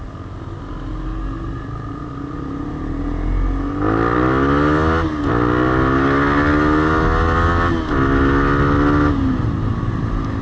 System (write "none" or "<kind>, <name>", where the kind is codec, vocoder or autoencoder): none